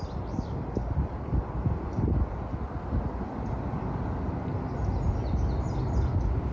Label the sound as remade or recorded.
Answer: recorded